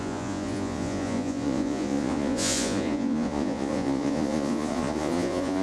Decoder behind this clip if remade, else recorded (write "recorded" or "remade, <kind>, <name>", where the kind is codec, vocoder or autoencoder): remade, vocoder, Vocos